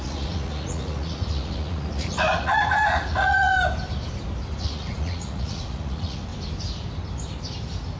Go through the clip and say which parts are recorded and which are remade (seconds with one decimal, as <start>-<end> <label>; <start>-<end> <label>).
0.0-3.5 remade; 3.5-4.6 recorded; 4.6-6.3 remade; 6.3-8.0 recorded